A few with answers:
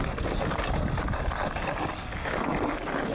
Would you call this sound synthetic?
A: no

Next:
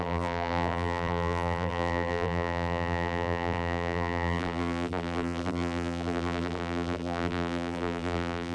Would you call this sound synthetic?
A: yes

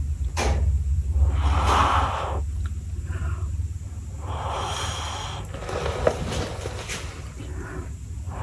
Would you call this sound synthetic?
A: no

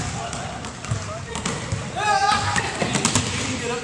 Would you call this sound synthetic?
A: no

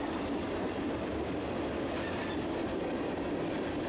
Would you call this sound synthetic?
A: no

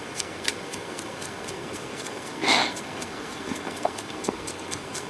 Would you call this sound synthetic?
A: yes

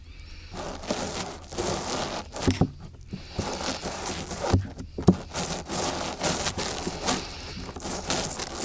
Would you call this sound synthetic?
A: no